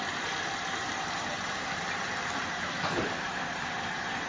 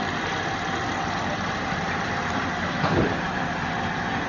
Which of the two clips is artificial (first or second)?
first